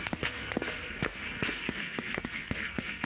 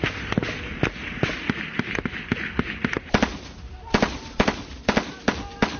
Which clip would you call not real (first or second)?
first